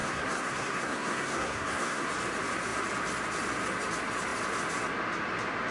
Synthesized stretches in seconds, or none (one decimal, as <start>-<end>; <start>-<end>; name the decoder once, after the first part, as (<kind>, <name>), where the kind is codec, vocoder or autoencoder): 0.0-2.1 (codec, SNAC)